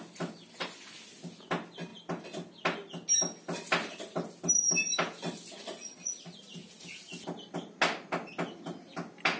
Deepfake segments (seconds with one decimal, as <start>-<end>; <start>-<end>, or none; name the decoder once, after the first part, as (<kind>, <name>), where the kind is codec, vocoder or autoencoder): none